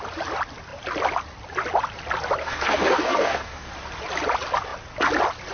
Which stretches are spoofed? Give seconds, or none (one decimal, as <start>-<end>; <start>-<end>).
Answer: 2.4-3.7